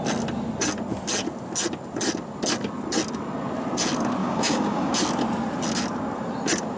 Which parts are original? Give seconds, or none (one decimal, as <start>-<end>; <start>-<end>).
0.0-4.2; 4.9-6.8